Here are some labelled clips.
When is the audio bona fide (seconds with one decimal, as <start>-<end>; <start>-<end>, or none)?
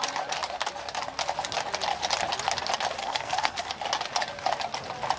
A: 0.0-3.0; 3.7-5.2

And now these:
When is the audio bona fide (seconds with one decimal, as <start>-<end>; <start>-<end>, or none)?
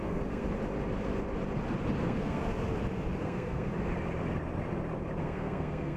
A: 0.4-2.0; 2.4-3.2; 3.7-5.2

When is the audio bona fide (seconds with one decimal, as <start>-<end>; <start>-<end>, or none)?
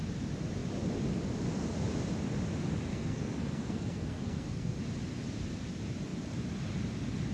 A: 0.0-2.9; 4.8-7.3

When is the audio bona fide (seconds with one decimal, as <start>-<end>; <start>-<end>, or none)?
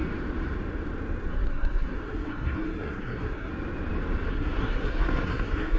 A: 0.0-1.3; 3.5-4.3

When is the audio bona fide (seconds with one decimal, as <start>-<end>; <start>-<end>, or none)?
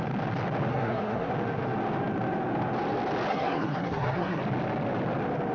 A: 0.0-0.7; 1.3-3.3; 4.4-5.5